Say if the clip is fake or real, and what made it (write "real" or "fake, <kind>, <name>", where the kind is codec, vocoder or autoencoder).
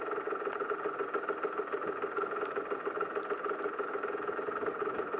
real